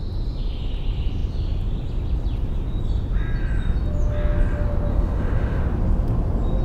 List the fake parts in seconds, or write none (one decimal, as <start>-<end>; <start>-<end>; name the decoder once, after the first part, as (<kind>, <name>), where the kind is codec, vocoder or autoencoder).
4.9-5.6 (autoencoder, DAC-VAE)